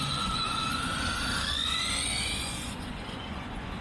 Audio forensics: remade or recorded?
remade